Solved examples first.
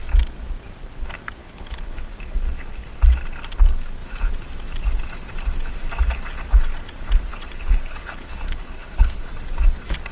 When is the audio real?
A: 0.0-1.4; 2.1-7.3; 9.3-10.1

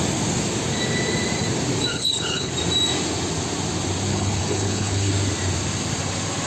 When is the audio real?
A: 0.0-1.9; 2.5-4.1; 5.1-6.5

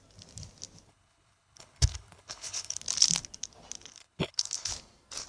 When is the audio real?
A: 0.0-0.9; 2.8-3.9; 4.7-5.3

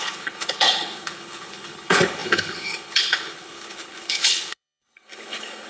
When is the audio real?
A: none

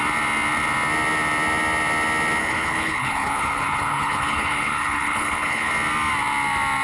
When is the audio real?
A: 0.0-2.4; 5.7-6.8